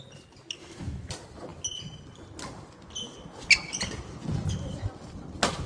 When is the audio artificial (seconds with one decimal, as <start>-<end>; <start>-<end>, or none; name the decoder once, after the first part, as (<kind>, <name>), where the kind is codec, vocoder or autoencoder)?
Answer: 0.6-1.1 (autoencoder, DAC-VAE)